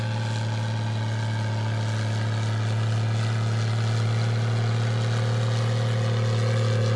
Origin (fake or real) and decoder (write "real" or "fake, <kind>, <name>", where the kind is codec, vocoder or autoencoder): real